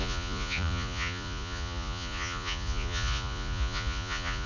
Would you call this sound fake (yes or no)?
yes